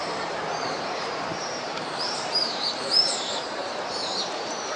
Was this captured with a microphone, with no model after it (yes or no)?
no